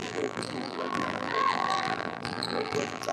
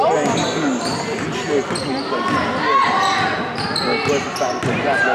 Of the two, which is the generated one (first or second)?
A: first